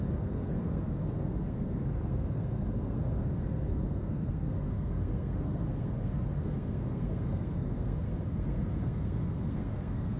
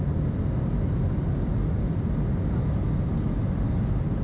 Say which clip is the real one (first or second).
second